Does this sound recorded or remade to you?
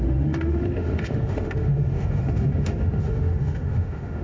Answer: remade